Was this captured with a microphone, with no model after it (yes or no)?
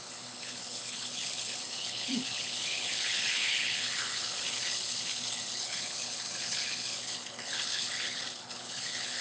no